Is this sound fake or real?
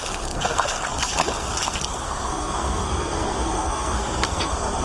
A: fake